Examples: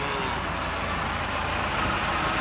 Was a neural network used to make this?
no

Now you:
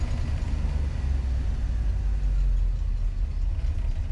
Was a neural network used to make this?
no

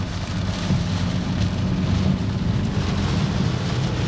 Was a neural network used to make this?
no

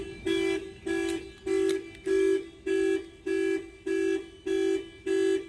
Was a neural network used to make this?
no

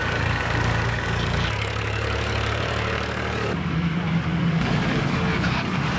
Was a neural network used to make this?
yes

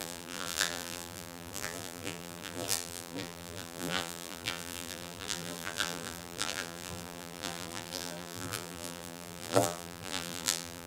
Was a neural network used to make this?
yes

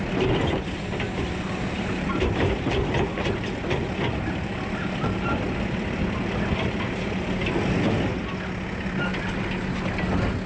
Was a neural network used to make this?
no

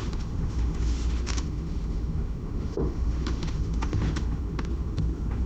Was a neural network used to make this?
yes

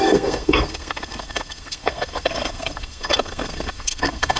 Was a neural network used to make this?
yes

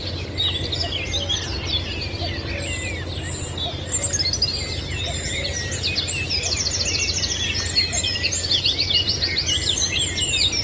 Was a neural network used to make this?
no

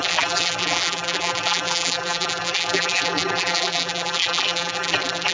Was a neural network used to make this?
yes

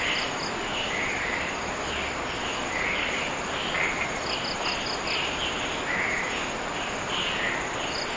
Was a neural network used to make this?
no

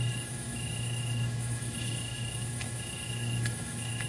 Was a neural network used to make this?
yes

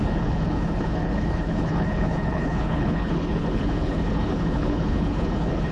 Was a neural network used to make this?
yes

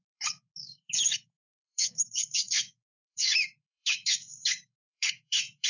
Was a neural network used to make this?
yes